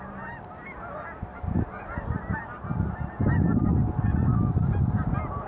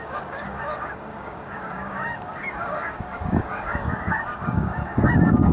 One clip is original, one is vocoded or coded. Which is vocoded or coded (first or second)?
second